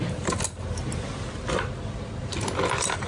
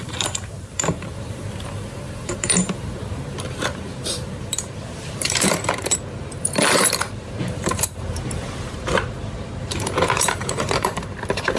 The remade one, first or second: second